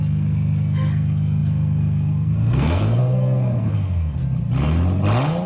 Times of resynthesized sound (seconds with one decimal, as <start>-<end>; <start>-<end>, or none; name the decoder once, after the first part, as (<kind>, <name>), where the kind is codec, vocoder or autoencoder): 0.0-4.2 (codec, SNAC)